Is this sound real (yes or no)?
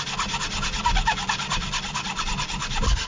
yes